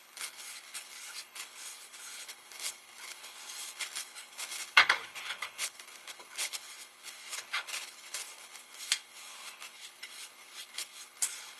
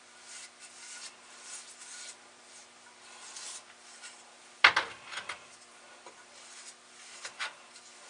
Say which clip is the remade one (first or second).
first